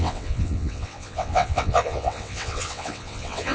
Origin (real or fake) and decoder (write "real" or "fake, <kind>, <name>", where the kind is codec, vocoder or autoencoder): fake, vocoder, WaveNeXt